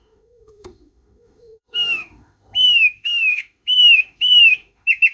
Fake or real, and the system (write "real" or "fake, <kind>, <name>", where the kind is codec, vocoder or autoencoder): fake, autoencoder, DAC-VAE